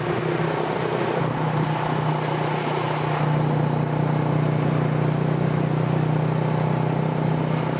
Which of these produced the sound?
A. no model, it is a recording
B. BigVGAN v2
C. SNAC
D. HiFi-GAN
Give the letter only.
A